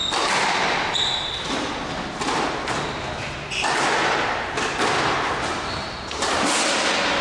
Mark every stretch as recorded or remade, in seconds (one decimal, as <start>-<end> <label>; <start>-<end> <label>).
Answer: 0.0-7.2 recorded